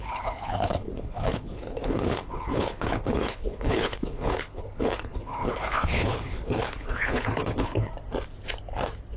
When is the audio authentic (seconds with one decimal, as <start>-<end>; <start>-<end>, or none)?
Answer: 7.9-9.2